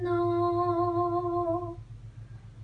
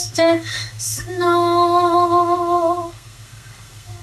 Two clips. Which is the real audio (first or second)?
first